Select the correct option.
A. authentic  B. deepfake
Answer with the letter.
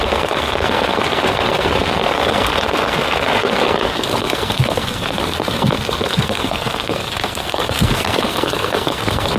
B